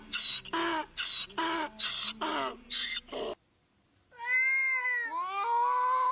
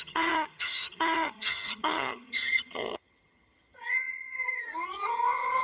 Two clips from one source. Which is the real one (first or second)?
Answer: first